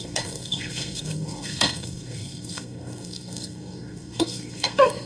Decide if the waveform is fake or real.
fake